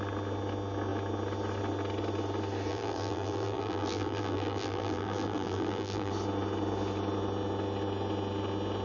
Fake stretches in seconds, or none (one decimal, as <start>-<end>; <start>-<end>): 2.7-6.1

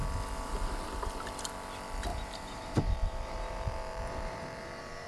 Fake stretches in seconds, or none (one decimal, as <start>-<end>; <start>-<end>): 2.1-5.1

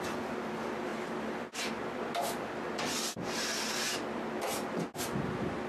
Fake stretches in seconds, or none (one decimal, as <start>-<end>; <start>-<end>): none

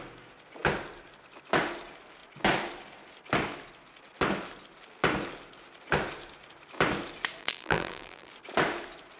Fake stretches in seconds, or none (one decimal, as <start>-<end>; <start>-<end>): 7.4-8.3